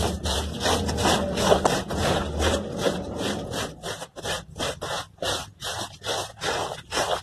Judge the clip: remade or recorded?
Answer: recorded